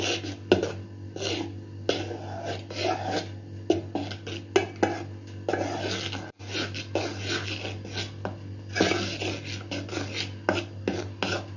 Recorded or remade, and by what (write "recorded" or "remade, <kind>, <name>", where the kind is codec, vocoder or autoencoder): recorded